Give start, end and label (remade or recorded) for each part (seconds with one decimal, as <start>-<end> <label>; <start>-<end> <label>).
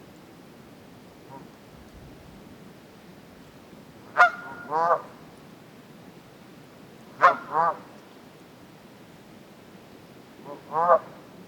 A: 0.0-11.5 recorded